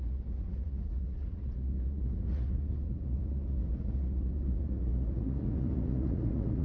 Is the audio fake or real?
fake